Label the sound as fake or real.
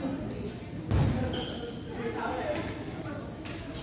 real